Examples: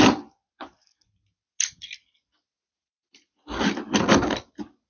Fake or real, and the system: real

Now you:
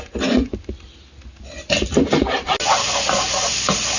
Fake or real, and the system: real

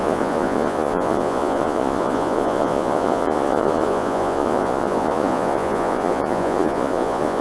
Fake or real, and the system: fake, vocoder, Vocos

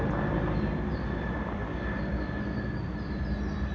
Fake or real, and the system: real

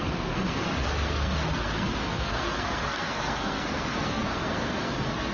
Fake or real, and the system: fake, codec, SNAC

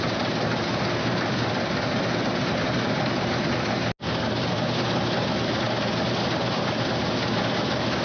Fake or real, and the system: real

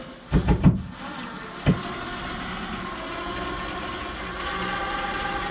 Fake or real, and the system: real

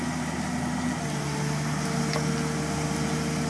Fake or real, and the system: real